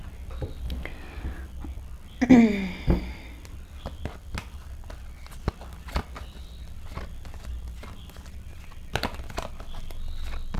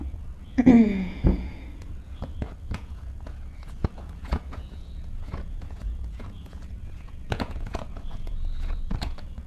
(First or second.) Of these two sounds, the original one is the first